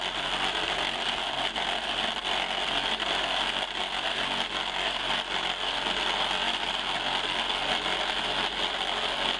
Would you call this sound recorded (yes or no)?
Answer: yes